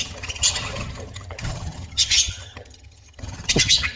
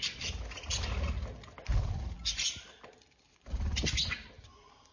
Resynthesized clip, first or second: first